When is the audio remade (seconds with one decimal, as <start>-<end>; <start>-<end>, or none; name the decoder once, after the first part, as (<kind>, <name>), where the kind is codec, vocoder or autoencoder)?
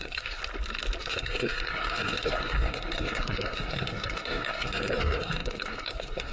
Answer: 0.0-0.4 (codec, SNAC); 1.0-6.3